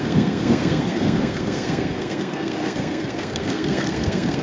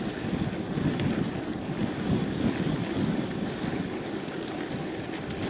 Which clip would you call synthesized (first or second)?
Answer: first